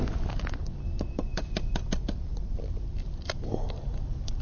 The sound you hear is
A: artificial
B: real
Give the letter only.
A